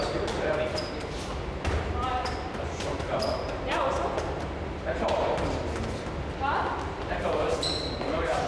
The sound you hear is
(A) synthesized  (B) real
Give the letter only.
B